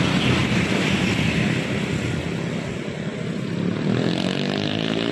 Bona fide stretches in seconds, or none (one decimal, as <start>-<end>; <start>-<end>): 0.0-0.4; 1.1-3.1